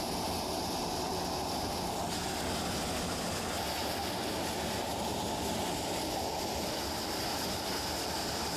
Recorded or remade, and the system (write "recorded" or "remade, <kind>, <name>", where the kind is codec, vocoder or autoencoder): recorded